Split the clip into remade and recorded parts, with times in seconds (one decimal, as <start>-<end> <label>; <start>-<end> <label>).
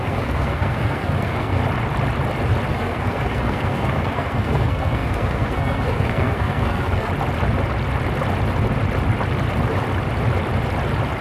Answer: 0.0-1.6 remade; 1.6-2.7 recorded; 2.7-7.1 remade; 7.1-11.2 recorded